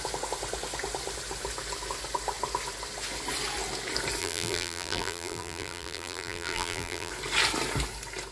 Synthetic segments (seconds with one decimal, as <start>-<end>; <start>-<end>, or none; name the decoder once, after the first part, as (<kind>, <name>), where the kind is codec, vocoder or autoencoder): 4.2-7.1 (vocoder, BigVGAN v2)